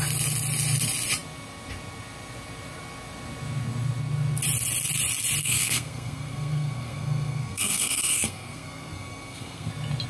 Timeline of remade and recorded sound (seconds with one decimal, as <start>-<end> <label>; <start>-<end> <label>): 0.0-5.4 recorded; 5.4-9.7 remade; 9.7-10.1 recorded